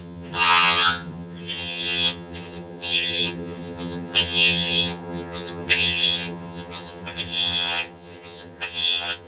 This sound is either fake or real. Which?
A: fake